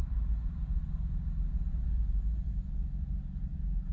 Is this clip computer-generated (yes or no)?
no